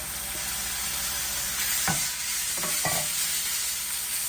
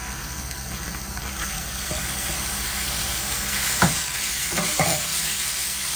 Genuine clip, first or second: first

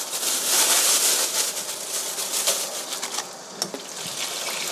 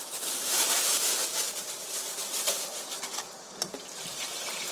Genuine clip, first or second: first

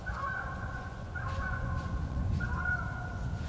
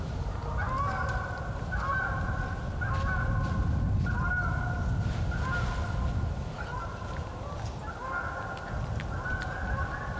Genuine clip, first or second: second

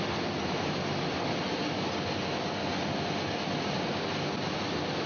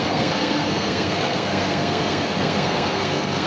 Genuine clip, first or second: first